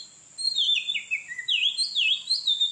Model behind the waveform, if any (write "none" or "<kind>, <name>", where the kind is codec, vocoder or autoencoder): none